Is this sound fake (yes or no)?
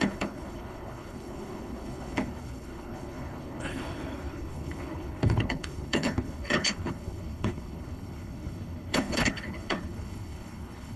yes